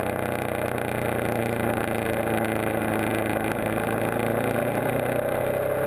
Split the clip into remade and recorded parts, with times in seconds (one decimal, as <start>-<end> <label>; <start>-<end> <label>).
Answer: 0.0-4.6 recorded; 4.6-5.4 remade; 5.4-5.9 recorded